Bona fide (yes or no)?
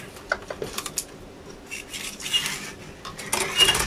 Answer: yes